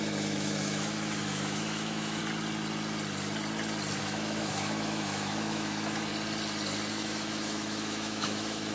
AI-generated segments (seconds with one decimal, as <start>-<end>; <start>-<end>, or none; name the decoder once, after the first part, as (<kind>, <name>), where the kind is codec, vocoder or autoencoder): 0.0-2.2 (autoencoder, DAC-VAE); 4.0-6.1; 6.9-8.7

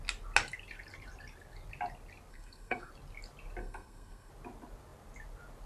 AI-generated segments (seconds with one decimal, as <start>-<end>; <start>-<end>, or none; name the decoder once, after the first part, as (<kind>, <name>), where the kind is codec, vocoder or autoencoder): 2.3-2.9 (codec, SNAC); 3.6-4.3

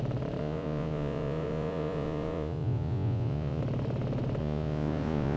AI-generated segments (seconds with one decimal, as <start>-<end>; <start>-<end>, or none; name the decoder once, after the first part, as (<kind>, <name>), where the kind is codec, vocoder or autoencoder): 0.4-3.6 (vocoder, Vocos); 4.4-5.4

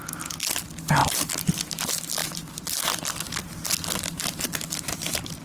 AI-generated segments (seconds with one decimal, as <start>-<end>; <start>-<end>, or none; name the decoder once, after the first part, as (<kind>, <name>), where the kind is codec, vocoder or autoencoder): none

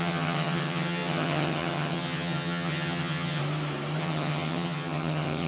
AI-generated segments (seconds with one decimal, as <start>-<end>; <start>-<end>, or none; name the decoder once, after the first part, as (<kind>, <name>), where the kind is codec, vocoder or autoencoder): 0.0-3.4 (vocoder, HiFi-GAN); 4.0-5.5